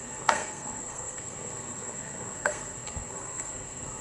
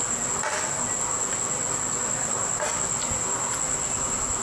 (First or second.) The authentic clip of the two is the second